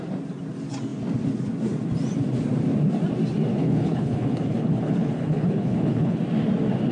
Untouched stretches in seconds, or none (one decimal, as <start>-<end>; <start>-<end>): 0.0-3.5; 6.2-6.9